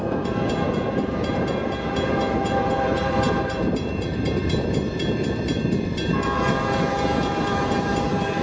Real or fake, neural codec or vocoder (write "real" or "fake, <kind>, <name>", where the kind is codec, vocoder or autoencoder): fake, vocoder, BigVGAN v2